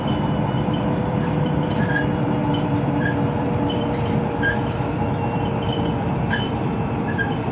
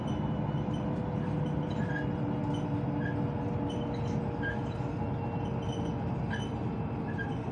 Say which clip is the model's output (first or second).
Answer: first